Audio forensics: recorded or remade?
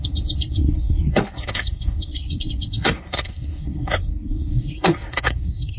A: remade